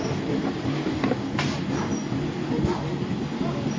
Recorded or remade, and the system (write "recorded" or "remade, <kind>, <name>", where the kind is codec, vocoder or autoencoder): recorded